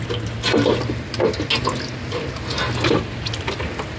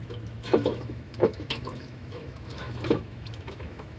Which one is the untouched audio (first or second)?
first